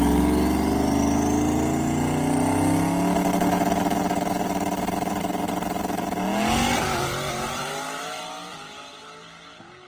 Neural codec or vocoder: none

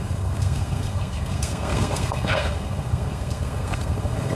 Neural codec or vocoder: codec, SNAC